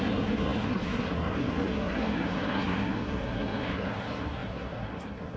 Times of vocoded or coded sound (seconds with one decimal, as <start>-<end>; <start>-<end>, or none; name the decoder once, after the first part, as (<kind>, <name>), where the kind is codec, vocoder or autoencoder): 0.0-5.4 (codec, SNAC)